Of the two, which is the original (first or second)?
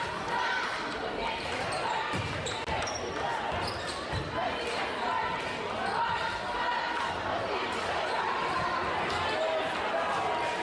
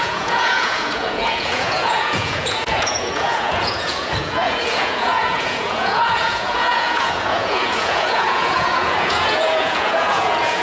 first